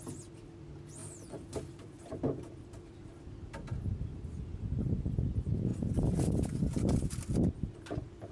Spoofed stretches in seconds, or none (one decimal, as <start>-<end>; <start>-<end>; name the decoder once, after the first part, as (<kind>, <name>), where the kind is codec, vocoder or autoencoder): 1.0-2.0 (vocoder, BigVGAN v2)

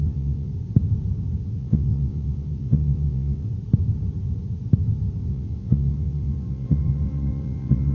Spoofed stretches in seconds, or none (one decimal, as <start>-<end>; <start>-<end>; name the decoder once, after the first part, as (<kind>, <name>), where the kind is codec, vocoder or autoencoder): 0.0-0.5 (vocoder, WaveNeXt); 1.6-3.5; 5.3-7.9

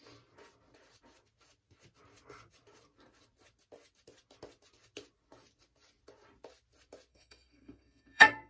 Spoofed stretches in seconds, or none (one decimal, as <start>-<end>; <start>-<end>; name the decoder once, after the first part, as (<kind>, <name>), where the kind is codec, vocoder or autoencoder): 7.1-8.5 (codec, SNAC)